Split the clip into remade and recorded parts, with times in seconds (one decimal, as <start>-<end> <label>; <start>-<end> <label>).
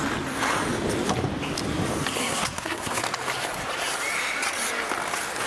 0.0-2.2 recorded; 2.2-3.0 remade; 3.0-5.5 recorded